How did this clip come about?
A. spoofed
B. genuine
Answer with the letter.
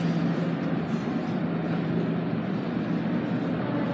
B